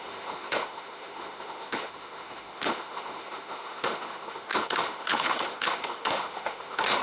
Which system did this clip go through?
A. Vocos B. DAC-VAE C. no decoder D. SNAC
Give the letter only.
B